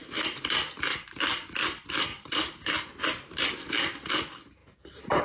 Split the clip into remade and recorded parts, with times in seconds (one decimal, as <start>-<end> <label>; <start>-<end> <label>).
0.0-2.1 recorded; 2.1-2.6 remade; 2.6-4.6 recorded; 4.6-5.2 remade